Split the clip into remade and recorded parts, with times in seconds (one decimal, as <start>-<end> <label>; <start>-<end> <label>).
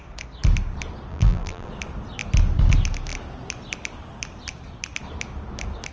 0.0-1.1 recorded; 1.1-1.7 remade; 1.7-5.9 recorded